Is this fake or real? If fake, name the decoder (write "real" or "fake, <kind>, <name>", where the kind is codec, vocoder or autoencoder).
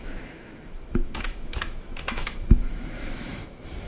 fake, autoencoder, DAC-VAE